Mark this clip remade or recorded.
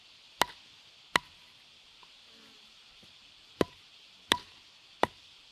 recorded